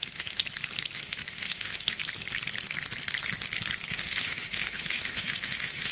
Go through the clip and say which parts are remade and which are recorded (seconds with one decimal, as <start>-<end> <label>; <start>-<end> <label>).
0.0-0.4 remade; 0.4-1.0 recorded; 1.0-2.0 remade; 2.0-3.9 recorded; 3.9-5.9 remade